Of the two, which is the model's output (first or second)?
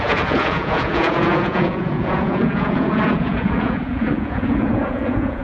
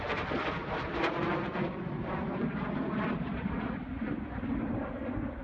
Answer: first